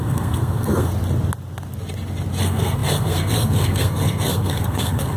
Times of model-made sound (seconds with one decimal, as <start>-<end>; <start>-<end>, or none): 0.0-0.9; 2.4-5.2